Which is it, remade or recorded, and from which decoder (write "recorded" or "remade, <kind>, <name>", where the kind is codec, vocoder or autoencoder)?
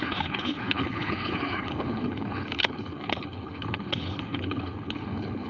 remade, codec, HILCodec